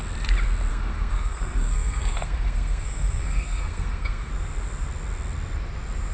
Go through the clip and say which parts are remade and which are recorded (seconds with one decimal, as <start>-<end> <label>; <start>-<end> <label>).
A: 0.0-0.7 recorded; 0.7-4.3 remade; 4.3-6.1 recorded